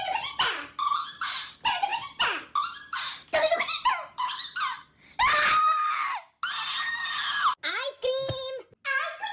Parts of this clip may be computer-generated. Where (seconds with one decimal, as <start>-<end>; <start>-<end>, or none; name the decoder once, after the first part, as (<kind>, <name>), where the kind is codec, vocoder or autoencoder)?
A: none